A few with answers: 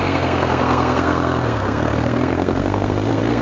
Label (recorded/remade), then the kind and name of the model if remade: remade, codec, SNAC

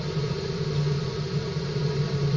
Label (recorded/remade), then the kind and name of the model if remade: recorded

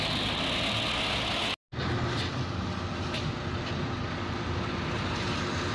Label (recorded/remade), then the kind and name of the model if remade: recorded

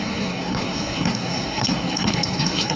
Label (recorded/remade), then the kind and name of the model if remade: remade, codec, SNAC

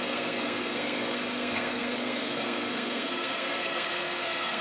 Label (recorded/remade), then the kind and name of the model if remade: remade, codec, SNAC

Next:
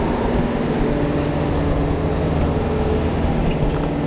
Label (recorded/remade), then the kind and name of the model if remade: recorded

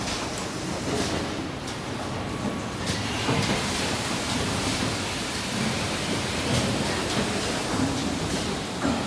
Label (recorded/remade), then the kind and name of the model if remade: recorded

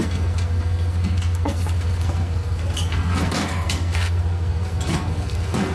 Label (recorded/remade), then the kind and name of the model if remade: remade, codec, SNAC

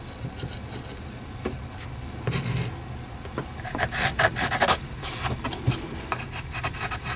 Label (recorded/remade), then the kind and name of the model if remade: recorded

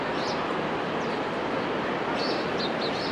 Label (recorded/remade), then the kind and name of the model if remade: recorded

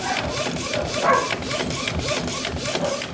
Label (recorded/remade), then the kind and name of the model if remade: recorded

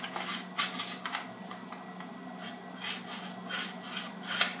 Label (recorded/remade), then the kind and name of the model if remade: recorded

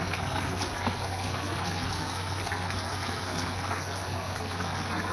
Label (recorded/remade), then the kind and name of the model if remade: remade, codec, SNAC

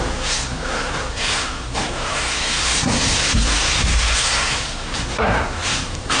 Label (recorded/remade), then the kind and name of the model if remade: remade, codec, SNAC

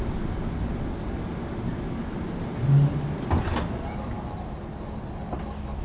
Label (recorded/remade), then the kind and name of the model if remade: recorded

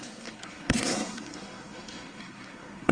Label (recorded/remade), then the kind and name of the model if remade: remade, codec, SNAC